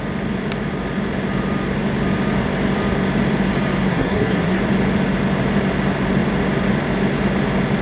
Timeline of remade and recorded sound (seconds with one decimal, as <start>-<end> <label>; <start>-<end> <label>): 0.0-3.9 recorded; 3.9-4.6 remade; 4.6-7.8 recorded